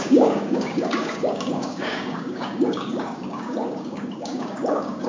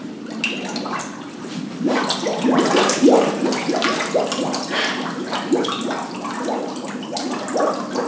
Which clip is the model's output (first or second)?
first